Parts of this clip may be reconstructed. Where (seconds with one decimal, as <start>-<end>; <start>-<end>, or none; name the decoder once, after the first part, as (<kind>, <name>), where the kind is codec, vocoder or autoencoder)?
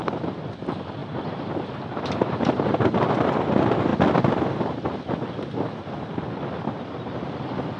1.0-3.0 (vocoder, BigVGAN v2)